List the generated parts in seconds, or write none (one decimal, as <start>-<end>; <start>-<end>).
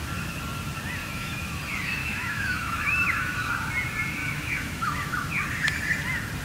1.0-1.6; 2.0-3.5; 4.2-5.3